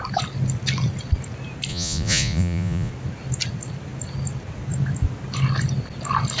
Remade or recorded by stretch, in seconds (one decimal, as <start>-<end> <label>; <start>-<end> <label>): 0.0-1.7 recorded; 1.7-2.9 remade; 2.9-6.4 recorded